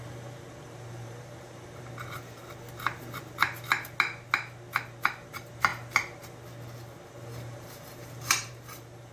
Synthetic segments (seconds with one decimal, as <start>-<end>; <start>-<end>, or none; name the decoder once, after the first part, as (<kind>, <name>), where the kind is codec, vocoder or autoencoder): 0.0-2.4 (vocoder, BigVGAN v2); 5.3-5.7; 7.3-9.1